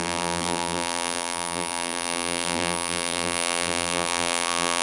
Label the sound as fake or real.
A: fake